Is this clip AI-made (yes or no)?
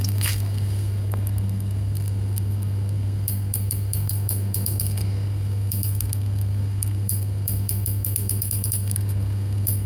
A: yes